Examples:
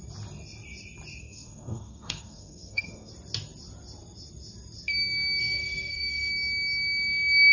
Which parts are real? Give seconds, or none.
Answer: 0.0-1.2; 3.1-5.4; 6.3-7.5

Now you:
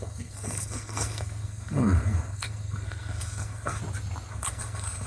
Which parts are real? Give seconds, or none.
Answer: 3.8-4.3

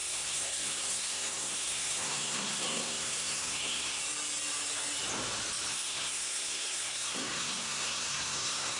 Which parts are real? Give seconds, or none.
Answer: 4.0-5.7